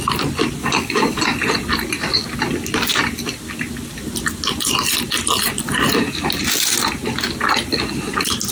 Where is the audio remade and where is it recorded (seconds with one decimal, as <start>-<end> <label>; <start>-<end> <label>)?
0.0-0.6 recorded; 0.6-1.2 remade; 1.2-8.5 recorded